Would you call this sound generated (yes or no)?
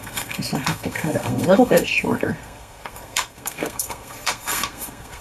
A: yes